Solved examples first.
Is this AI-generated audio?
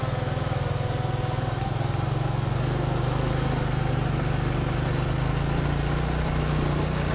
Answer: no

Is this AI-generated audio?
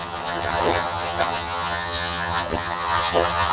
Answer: yes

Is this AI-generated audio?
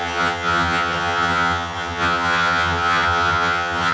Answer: yes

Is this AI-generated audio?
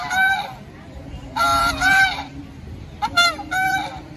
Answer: yes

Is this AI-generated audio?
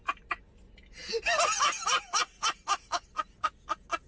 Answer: no